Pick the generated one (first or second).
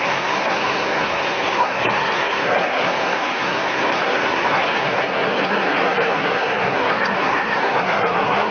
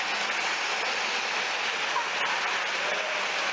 first